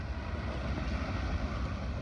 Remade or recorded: recorded